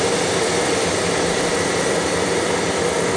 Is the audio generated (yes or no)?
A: no